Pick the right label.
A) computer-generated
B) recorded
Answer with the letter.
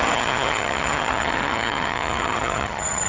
A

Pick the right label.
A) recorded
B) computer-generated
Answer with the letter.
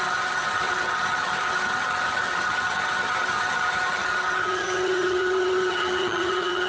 B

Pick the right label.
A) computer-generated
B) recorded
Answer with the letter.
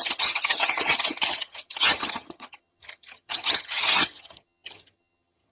A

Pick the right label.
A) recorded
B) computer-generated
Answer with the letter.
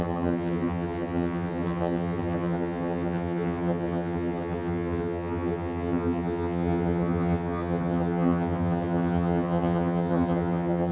B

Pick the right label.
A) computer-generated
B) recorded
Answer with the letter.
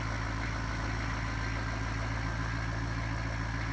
B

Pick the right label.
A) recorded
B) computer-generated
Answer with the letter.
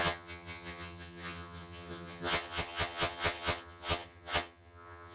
B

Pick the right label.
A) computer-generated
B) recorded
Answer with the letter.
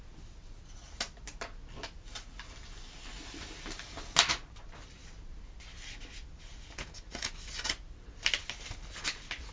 B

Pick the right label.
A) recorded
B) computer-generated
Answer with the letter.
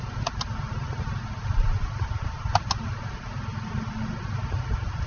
A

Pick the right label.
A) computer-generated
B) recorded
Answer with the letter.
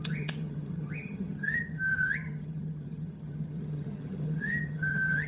A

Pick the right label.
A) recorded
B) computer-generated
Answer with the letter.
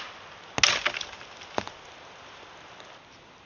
A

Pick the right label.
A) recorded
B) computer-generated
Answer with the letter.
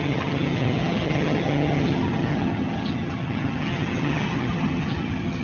B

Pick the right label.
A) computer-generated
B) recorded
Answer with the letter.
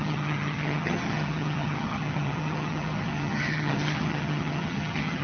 A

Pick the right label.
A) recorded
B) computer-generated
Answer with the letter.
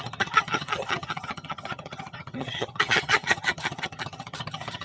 B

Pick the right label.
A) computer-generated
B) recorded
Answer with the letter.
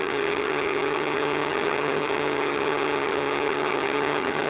A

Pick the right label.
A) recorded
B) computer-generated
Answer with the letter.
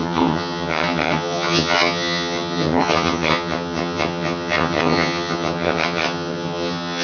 B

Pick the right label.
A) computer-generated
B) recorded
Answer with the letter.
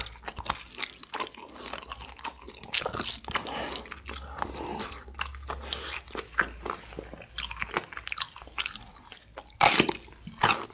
B